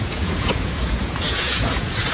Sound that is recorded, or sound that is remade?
remade